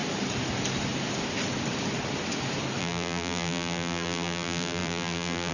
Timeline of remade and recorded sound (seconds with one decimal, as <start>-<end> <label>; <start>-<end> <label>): 0.0-2.8 recorded; 2.8-5.5 remade